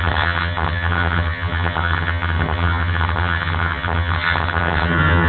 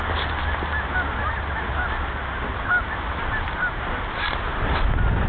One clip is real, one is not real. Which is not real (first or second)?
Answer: first